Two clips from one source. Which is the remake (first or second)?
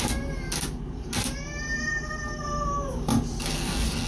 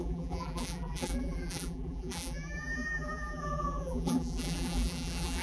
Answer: second